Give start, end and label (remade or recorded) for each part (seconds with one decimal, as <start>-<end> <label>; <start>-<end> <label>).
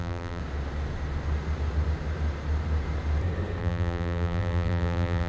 0.0-0.4 remade; 0.4-3.6 recorded; 3.6-5.3 remade